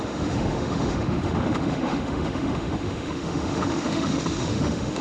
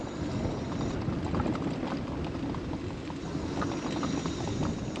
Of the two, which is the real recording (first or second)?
second